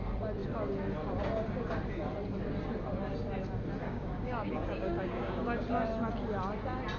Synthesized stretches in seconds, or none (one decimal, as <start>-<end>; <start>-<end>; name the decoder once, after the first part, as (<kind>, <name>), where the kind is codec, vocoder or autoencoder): 3.8-5.6 (codec, DAC)